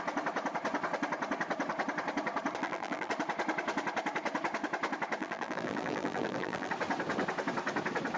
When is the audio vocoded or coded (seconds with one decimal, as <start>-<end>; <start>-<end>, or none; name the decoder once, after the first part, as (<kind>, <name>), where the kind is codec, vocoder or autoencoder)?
2.6-3.1 (vocoder, BigVGAN v2); 5.2-6.7